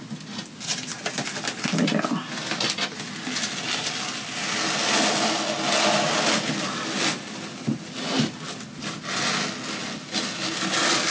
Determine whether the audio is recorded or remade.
recorded